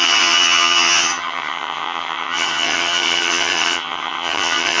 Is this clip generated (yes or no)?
yes